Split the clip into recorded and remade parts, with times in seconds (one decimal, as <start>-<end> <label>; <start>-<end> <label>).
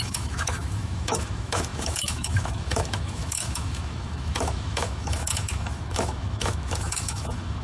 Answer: 0.0-7.6 remade